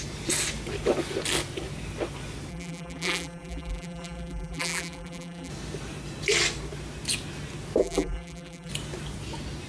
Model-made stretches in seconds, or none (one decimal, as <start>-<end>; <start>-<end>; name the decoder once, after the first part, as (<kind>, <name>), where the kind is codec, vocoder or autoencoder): 2.5-5.5 (vocoder, BigVGAN v2); 7.8-8.7